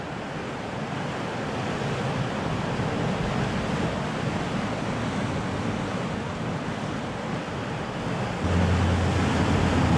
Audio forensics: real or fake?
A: real